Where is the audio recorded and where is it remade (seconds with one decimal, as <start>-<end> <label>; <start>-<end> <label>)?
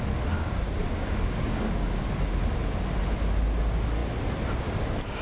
0.0-0.8 recorded; 0.8-2.1 remade; 2.1-5.2 recorded